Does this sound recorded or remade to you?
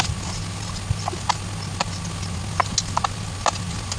recorded